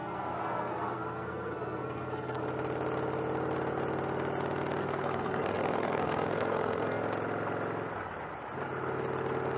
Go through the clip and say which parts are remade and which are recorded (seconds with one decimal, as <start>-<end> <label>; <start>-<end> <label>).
0.0-2.4 remade; 2.4-4.8 recorded; 4.8-7.0 remade; 7.0-9.6 recorded